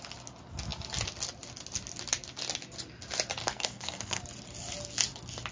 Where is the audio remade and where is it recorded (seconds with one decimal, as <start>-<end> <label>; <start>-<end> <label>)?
0.0-3.4 recorded; 3.4-4.2 remade; 4.2-5.5 recorded